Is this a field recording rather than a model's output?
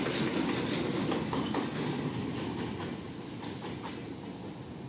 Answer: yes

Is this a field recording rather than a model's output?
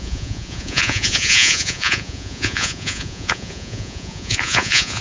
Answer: no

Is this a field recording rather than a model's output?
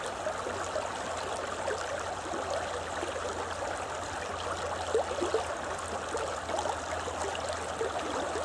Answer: yes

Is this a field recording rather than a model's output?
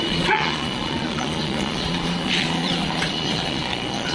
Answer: no